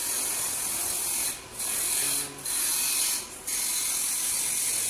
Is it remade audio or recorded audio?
recorded